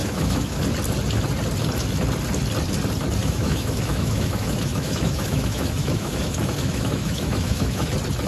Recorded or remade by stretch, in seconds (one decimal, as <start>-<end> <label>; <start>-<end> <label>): 0.0-0.6 remade; 0.6-3.2 recorded; 3.2-7.9 remade; 7.9-8.3 recorded